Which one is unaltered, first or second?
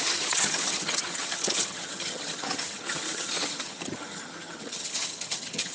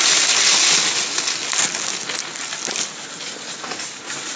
second